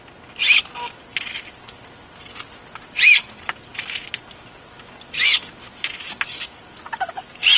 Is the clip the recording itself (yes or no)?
yes